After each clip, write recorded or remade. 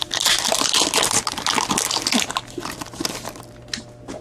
recorded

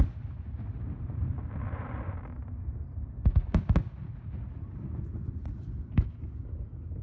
recorded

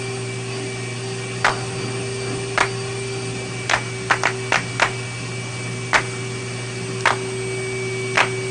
recorded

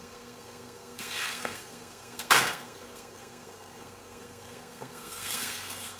remade